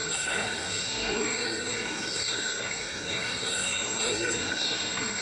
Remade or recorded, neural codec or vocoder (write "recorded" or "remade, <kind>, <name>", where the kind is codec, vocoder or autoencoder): remade, codec, SNAC